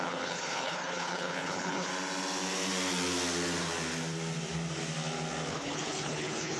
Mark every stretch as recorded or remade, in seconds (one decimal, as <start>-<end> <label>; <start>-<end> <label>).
0.0-1.9 remade; 1.9-5.5 recorded; 5.5-6.6 remade

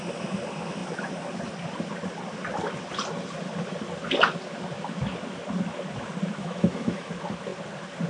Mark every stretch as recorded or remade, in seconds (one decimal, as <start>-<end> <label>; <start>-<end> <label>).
0.0-6.4 recorded; 6.4-7.1 remade; 7.1-8.1 recorded

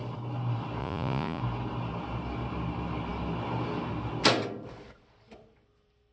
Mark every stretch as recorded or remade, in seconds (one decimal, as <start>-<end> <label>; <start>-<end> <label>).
0.0-0.8 recorded; 0.8-1.4 remade; 1.4-6.1 recorded

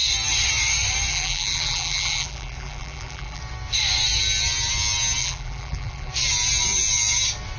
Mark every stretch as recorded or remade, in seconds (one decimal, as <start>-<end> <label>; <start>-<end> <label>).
0.0-1.1 recorded; 1.1-3.4 remade; 3.4-5.2 recorded; 5.2-6.1 remade; 6.1-7.6 recorded

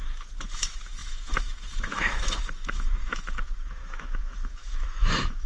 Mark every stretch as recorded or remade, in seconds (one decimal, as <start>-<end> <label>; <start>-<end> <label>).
0.0-5.5 remade

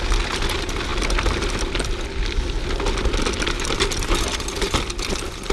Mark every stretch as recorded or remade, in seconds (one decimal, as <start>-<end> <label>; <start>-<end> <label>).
0.0-5.5 recorded

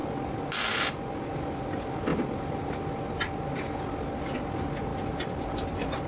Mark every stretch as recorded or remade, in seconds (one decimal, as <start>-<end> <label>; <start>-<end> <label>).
0.0-6.1 recorded